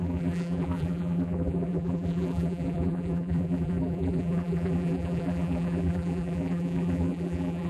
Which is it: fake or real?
fake